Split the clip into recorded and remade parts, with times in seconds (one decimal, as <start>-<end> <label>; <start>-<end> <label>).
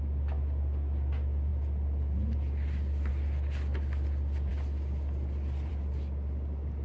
0.0-1.5 recorded; 1.5-3.1 remade; 3.1-4.5 recorded; 4.5-5.7 remade; 5.7-6.8 recorded